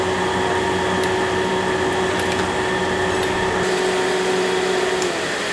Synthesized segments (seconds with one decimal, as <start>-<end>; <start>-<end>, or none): none